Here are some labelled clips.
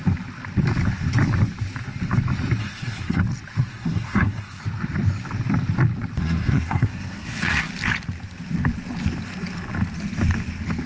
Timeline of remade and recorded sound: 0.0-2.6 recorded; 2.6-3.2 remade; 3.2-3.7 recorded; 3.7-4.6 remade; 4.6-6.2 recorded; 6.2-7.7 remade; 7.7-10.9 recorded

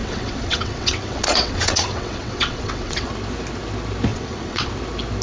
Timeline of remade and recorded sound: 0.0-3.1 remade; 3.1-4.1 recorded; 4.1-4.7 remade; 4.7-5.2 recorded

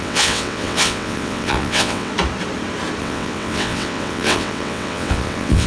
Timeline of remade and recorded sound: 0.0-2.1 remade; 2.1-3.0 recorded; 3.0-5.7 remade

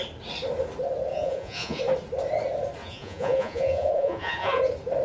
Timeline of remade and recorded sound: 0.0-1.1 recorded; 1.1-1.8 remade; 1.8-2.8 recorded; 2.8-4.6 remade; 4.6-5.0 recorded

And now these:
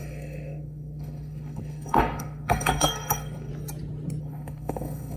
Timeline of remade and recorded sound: 0.0-3.5 remade; 3.5-4.2 recorded; 4.2-5.2 remade